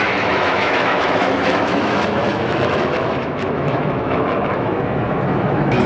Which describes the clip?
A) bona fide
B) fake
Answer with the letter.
B